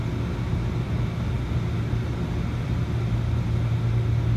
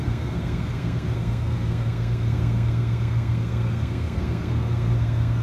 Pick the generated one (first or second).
second